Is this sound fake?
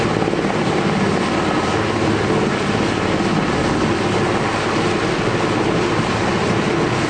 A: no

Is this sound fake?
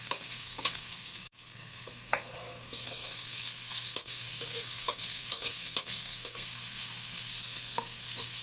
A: yes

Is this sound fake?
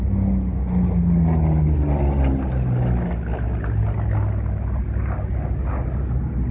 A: no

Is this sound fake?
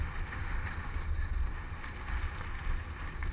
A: no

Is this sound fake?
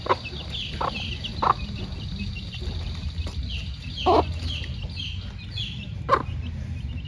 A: no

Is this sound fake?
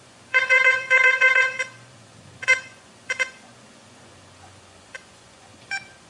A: yes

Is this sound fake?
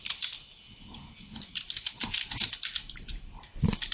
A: no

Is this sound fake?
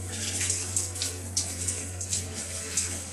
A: yes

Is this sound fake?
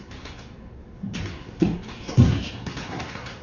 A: yes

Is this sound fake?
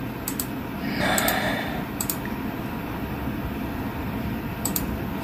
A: yes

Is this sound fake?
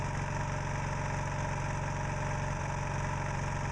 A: yes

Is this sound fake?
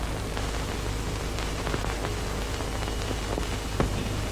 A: no